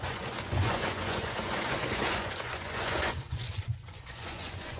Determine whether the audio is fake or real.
fake